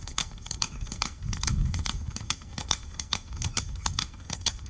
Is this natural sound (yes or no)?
no